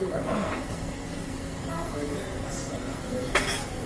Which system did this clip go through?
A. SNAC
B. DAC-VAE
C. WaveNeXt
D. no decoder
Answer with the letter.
A